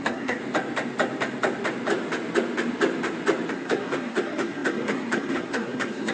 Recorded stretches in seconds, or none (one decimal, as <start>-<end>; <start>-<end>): 0.4-3.5